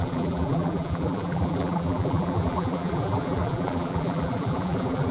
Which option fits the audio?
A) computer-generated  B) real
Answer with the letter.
A